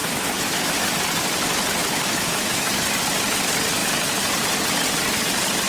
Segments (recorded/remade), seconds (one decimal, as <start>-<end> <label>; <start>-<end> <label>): 0.0-0.8 remade; 0.8-1.8 recorded; 1.8-2.7 remade; 2.7-5.7 recorded